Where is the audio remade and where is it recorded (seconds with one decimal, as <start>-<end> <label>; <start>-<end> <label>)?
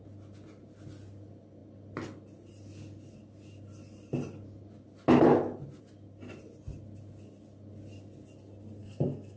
0.0-8.8 recorded; 8.8-9.4 remade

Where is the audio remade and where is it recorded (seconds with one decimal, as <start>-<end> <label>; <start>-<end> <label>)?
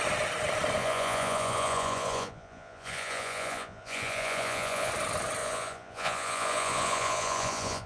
0.0-0.8 recorded; 0.8-4.9 remade; 4.9-5.4 recorded; 5.4-7.9 remade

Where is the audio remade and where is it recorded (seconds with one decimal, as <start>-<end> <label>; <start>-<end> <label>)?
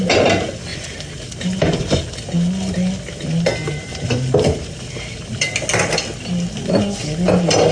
0.0-0.7 recorded; 0.7-2.0 remade; 2.0-3.5 recorded; 3.5-5.2 remade; 5.2-7.7 recorded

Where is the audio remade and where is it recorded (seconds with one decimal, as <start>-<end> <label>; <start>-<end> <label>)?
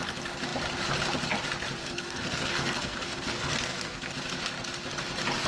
0.0-1.8 recorded; 1.8-4.1 remade; 4.1-5.5 recorded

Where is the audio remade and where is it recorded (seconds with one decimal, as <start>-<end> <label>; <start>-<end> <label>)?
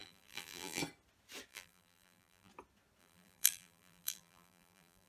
0.0-0.8 remade; 0.8-1.5 recorded; 1.5-2.5 remade; 2.5-3.0 recorded; 3.0-5.1 remade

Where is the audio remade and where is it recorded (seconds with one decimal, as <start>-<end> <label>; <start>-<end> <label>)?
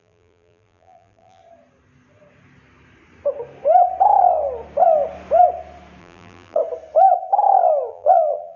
0.0-1.4 remade; 1.4-6.0 recorded; 6.0-6.6 remade; 6.6-7.9 recorded; 7.9-8.6 remade